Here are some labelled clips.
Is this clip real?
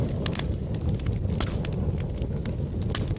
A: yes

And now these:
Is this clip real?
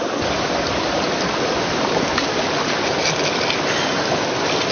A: yes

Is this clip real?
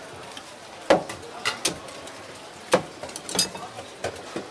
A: yes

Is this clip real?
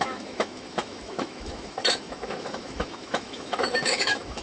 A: no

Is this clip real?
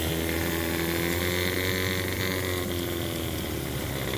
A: yes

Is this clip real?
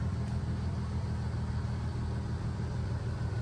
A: yes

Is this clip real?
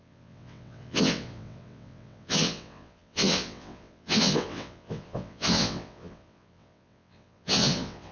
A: no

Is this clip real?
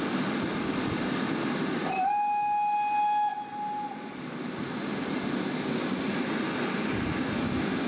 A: yes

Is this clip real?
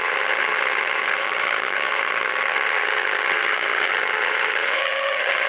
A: no